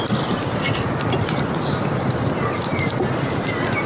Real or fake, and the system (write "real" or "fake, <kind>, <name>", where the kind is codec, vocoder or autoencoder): real